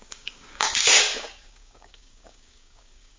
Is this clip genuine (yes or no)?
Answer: no